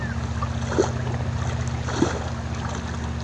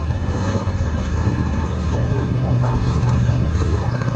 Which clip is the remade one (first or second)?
second